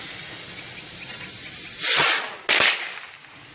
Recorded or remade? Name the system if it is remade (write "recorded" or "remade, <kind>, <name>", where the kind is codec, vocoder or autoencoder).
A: recorded